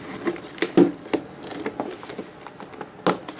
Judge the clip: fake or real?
real